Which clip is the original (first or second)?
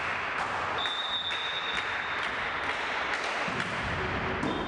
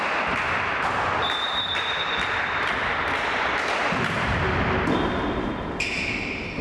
first